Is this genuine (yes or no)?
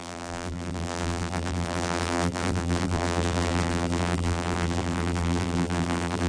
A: no